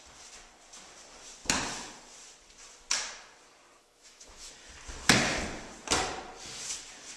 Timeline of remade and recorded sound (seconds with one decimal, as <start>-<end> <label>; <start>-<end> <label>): 0.0-3.8 recorded; 3.8-4.5 remade; 4.5-7.2 recorded